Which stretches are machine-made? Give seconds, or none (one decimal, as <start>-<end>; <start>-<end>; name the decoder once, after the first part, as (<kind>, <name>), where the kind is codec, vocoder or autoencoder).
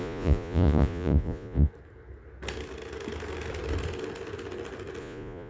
0.0-1.7 (vocoder, Vocos); 5.0-5.5